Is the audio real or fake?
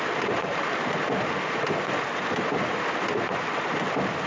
real